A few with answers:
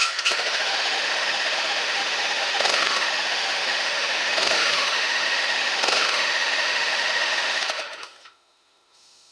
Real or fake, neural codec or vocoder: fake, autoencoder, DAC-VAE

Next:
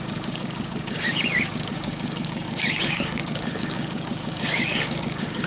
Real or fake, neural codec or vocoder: fake, codec, DAC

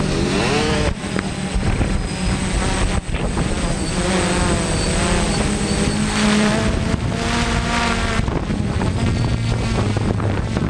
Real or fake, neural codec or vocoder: real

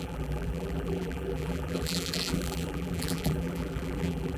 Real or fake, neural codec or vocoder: fake, vocoder, BigVGAN v2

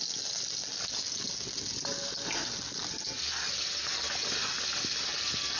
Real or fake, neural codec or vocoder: real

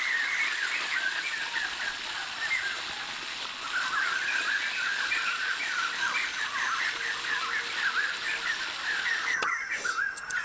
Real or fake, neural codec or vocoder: real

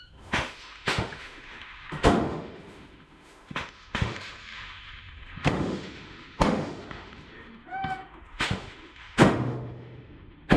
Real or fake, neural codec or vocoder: fake, autoencoder, DAC-VAE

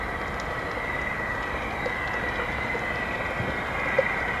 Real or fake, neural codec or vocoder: real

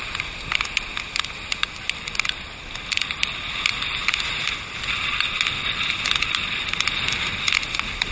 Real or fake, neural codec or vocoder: real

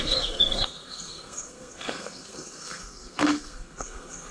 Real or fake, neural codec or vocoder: fake, codec, SNAC